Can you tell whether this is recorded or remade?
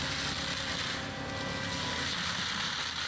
recorded